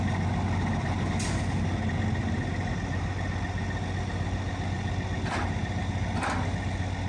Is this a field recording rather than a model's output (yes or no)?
yes